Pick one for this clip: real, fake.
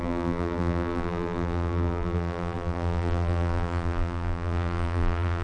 fake